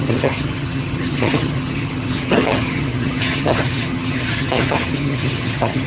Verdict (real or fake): fake